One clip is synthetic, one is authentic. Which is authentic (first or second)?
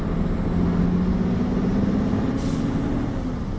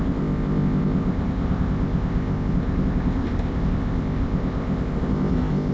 first